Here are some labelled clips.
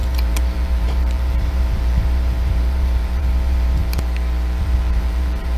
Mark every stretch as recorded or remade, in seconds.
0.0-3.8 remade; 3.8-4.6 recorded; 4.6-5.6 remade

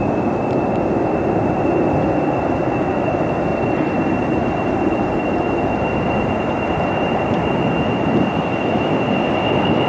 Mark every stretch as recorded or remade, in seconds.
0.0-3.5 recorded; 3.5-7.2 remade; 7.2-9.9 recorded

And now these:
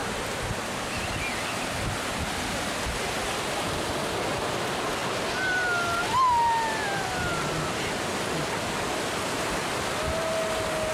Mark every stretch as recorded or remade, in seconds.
0.0-10.9 recorded

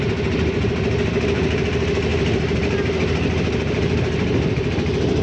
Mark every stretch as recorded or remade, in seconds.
0.0-5.2 recorded

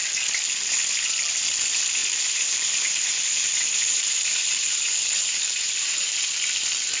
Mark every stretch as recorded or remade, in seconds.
0.0-2.0 recorded; 2.0-6.2 remade; 6.2-7.0 recorded

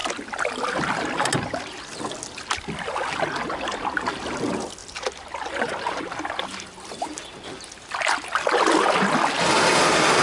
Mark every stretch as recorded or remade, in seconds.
0.0-10.2 recorded